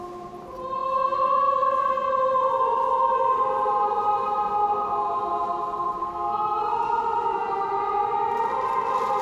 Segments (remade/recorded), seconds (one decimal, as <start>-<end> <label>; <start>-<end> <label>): 0.0-6.0 recorded; 6.0-6.6 remade; 6.6-9.2 recorded